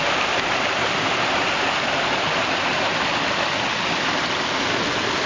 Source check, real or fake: real